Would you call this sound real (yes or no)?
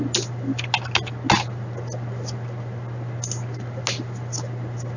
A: yes